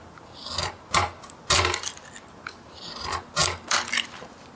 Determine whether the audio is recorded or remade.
recorded